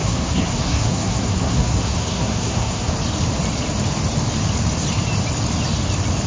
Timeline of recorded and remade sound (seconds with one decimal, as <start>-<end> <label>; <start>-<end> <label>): 0.0-2.9 remade; 2.9-6.3 recorded